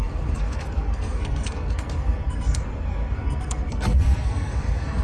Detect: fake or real fake